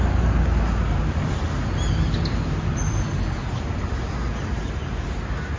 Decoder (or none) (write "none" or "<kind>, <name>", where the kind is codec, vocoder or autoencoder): none